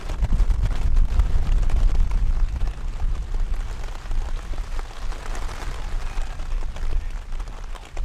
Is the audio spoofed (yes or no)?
no